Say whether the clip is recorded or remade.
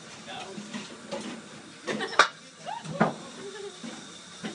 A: recorded